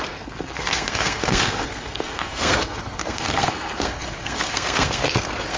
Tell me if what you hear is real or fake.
fake